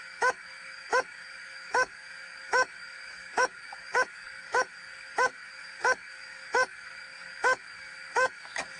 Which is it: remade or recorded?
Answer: remade